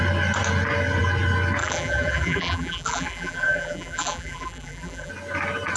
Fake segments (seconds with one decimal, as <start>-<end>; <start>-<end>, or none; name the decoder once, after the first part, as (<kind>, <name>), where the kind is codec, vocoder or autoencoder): 1.6-5.1 (vocoder, BigVGAN v2)